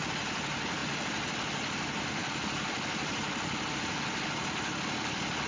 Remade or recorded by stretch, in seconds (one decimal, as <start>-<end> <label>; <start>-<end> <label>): 0.0-5.5 recorded